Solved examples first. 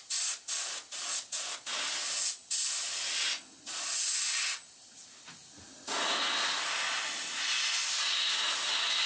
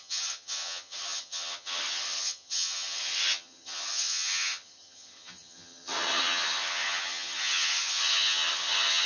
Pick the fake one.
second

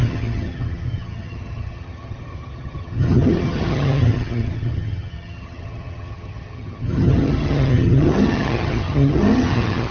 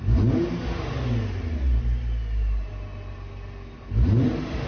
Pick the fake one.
first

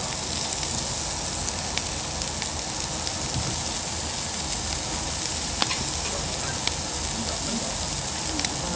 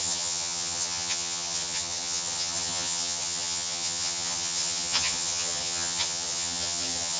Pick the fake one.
second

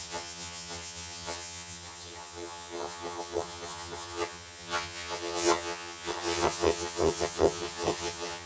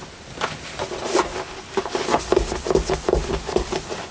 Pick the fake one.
first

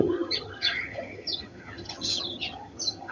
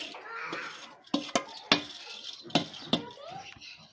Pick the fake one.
first